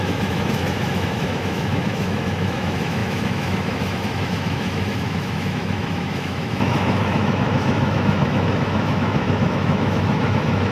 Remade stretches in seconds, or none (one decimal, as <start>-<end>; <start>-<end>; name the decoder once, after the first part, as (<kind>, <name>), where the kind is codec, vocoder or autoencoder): 0.0-10.7 (autoencoder, DAC-VAE)